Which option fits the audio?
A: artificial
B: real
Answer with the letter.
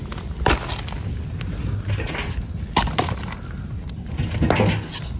B